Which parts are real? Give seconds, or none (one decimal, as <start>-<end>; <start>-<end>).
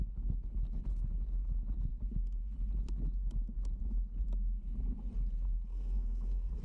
0.0-5.7